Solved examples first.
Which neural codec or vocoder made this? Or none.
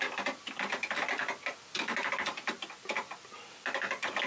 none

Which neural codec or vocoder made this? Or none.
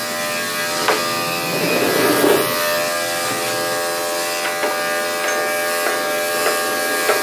none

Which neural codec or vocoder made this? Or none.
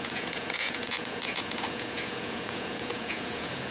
vocoder, Vocos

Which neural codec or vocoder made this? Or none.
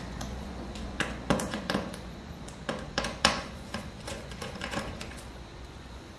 vocoder, Vocos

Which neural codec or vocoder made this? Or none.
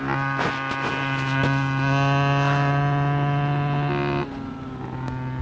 none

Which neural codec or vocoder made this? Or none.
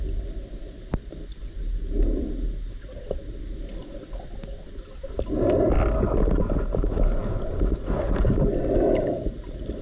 none